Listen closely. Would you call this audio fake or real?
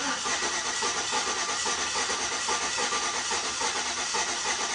real